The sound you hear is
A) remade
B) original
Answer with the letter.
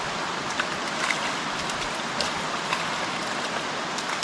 B